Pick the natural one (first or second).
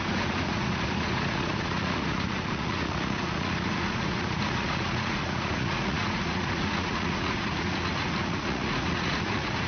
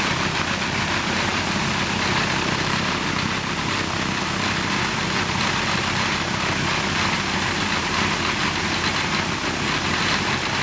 second